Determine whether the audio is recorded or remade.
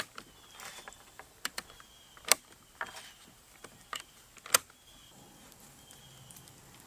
recorded